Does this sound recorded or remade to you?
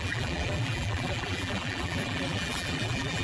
remade